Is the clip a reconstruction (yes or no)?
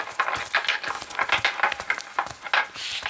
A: no